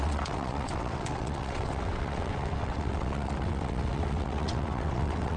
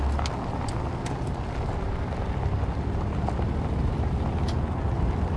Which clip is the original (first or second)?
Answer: second